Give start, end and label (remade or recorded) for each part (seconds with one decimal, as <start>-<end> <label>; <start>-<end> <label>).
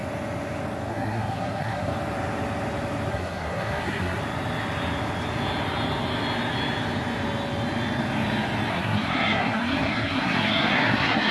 0.0-0.9 recorded; 0.9-1.9 remade; 1.9-3.1 recorded; 3.1-4.2 remade; 4.2-8.7 recorded; 8.7-11.3 remade